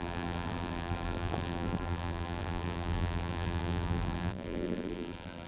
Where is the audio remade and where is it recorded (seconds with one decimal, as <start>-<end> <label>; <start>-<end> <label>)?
0.0-5.5 remade